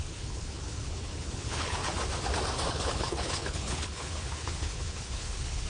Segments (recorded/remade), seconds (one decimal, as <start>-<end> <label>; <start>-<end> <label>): 0.0-1.8 remade; 1.8-2.7 recorded; 2.7-5.7 remade